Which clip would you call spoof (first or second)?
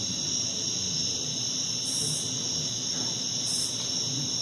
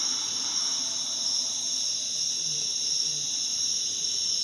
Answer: second